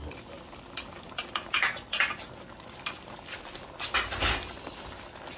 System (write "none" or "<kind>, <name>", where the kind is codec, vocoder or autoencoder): none